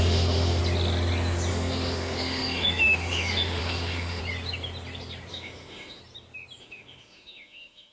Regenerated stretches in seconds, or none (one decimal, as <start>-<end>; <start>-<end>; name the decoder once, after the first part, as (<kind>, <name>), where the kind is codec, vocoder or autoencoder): 0.0-0.6 (autoencoder, DAC-VAE); 1.5-4.2; 5.3-6.0; 6.6-7.9